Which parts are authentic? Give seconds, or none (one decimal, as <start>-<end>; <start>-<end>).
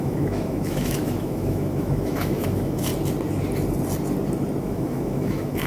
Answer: 2.9-4.6